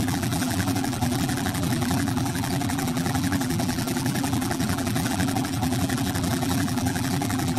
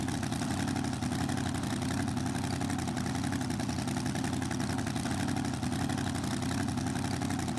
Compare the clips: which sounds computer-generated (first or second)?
first